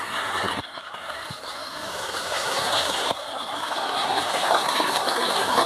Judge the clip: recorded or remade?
remade